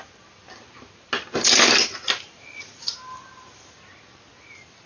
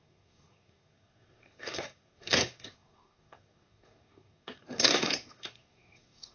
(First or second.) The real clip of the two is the first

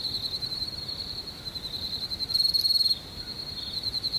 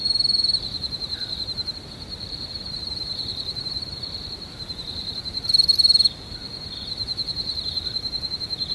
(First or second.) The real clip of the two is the first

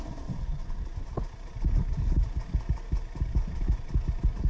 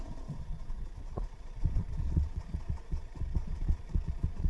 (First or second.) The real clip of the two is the first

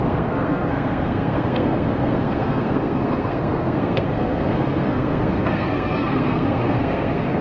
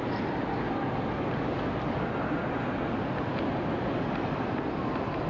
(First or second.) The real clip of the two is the second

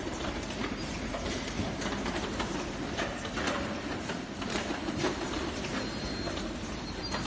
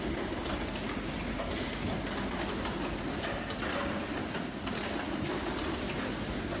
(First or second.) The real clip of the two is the second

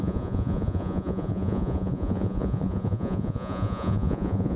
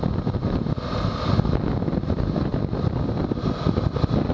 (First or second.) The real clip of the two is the second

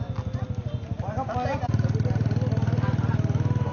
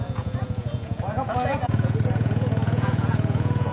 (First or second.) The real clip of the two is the first